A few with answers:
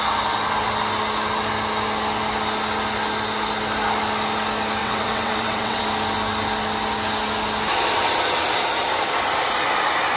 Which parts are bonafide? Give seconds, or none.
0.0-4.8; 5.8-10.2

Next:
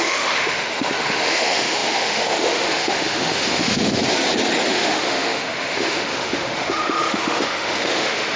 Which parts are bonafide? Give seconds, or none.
4.0-4.7

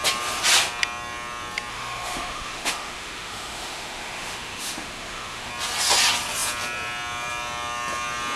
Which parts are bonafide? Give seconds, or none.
0.0-1.7; 5.5-8.4

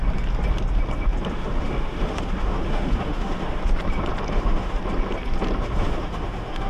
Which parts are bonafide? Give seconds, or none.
0.0-1.3; 3.6-4.3; 4.8-5.6